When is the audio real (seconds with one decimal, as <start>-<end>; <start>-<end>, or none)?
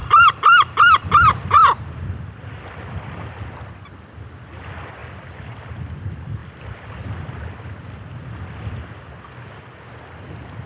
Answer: 0.0-10.7